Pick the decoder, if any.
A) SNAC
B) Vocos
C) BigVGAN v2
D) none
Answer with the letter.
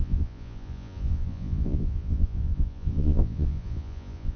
B